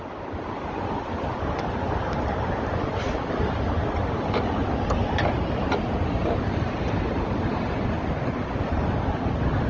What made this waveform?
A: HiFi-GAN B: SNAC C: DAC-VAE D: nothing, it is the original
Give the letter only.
D